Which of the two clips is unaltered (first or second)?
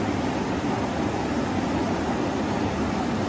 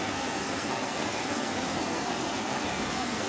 first